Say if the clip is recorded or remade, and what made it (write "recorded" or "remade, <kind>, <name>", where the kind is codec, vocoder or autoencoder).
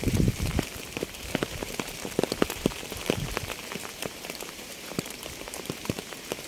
remade, vocoder, BigVGAN v2